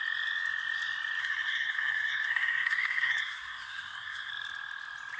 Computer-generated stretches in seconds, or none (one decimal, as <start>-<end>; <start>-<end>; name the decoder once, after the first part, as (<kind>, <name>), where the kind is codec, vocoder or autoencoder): 1.2-4.3 (codec, SNAC)